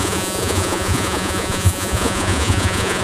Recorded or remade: remade